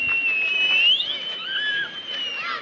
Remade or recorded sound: recorded